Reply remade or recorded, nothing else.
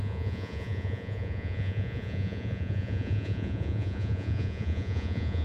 remade